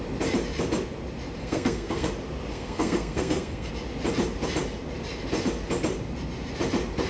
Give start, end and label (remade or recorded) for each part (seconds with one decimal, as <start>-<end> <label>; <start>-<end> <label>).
0.0-1.4 recorded; 1.4-2.1 remade; 2.1-2.5 recorded; 2.5-3.7 remade; 3.7-7.1 recorded